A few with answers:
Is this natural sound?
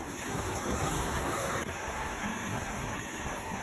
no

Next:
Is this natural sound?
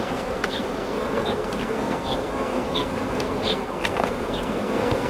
no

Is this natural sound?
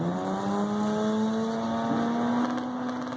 yes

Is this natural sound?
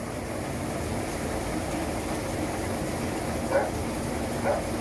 yes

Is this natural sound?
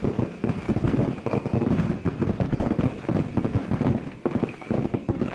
no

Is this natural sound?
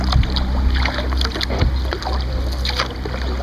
yes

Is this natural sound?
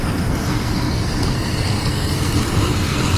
no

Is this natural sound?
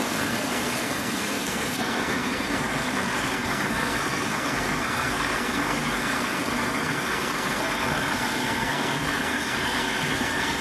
no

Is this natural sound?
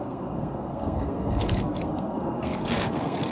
no